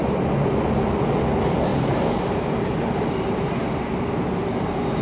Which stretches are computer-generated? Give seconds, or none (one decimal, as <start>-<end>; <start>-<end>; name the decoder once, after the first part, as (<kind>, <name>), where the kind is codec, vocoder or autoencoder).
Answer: 0.0-1.1 (vocoder, BigVGAN v2); 1.7-3.6